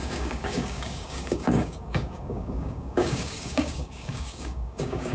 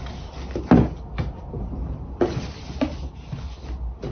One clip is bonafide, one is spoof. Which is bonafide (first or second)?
second